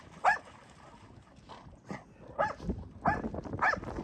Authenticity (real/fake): real